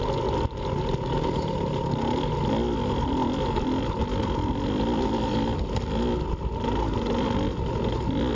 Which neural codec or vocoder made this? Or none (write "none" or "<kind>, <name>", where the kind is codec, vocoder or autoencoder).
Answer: none